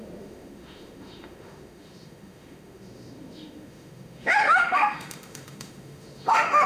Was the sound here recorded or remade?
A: remade